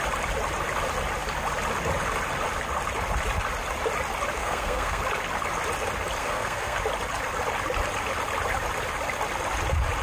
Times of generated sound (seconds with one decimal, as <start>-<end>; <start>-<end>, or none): 4.4-5.0; 6.2-6.8